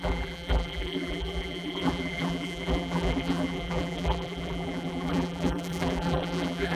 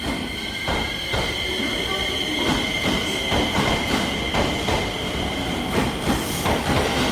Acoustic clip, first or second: second